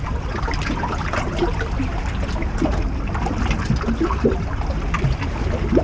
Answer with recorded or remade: recorded